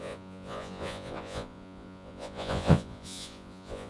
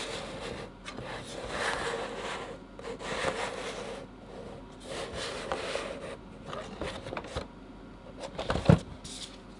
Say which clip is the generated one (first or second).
first